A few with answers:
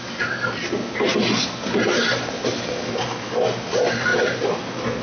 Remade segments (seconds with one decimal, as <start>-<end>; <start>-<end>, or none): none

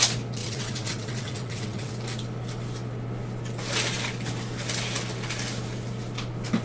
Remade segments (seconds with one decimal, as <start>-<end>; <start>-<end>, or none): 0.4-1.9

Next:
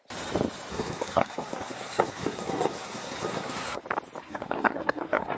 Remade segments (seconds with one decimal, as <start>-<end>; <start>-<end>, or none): 0.7-3.8; 4.2-5.4

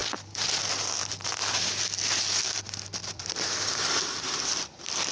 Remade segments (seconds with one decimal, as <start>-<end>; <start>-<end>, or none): 0.0-0.7; 3.0-5.1

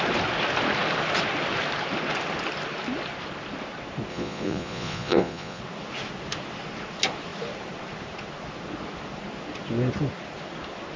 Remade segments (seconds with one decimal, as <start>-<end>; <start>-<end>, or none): 4.1-5.6

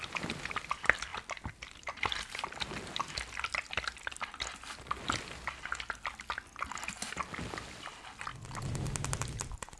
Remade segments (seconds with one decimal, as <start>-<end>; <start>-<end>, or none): none